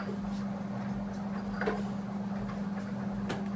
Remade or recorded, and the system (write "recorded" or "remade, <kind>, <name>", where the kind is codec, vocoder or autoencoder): recorded